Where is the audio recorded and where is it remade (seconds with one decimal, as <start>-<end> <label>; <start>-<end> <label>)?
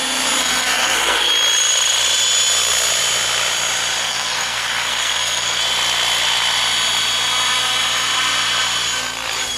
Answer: 0.0-0.4 recorded; 0.4-1.3 remade; 1.3-4.0 recorded; 4.0-5.6 remade; 5.6-9.6 recorded